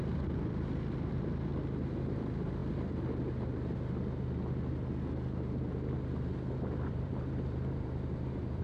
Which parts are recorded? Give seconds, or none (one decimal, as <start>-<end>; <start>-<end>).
1.5-2.1; 2.6-6.9